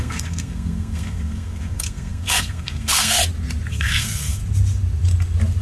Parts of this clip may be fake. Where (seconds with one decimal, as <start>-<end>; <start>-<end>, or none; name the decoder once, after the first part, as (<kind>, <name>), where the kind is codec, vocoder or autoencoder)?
0.0-3.2 (codec, SNAC); 3.7-4.4